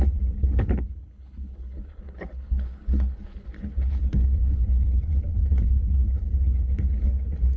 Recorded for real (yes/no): no